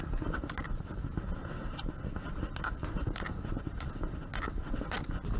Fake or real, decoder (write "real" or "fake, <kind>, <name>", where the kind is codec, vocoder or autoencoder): real